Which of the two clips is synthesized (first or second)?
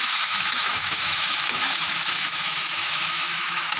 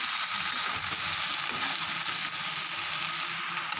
first